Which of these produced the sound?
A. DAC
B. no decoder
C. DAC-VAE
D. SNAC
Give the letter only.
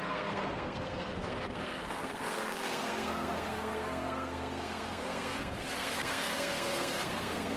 D